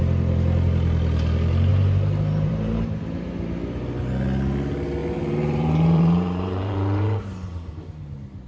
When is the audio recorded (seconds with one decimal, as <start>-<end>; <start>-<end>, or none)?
0.0-1.7; 3.0-5.0; 7.7-8.5